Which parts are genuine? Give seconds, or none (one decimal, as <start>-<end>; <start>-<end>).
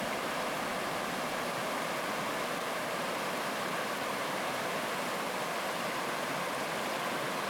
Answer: 0.0-7.5